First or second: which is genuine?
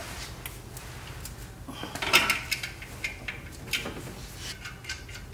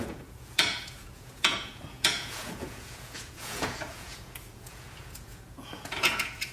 first